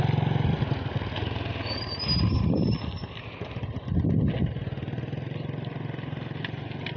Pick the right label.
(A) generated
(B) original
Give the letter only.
B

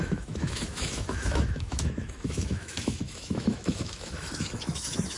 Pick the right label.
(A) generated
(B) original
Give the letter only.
A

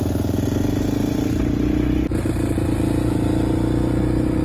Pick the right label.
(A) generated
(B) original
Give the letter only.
B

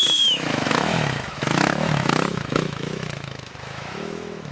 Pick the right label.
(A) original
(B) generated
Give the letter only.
B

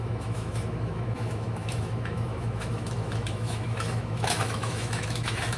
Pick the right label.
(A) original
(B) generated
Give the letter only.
B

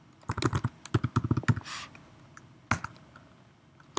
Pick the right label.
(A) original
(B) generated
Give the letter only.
A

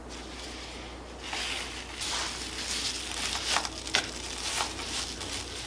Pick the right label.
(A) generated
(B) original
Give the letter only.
B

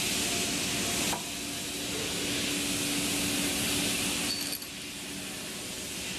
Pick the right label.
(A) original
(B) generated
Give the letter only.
A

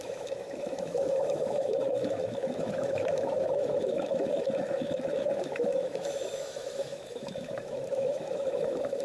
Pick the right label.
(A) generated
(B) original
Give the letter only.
A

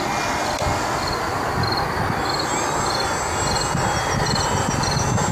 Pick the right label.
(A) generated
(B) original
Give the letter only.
B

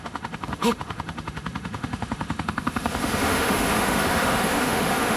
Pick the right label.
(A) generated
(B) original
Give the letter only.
A